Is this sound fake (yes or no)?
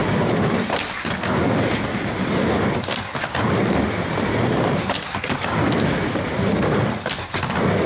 no